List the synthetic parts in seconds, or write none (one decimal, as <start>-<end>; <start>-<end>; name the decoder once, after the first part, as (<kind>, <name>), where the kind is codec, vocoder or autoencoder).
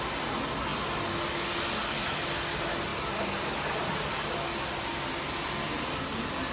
none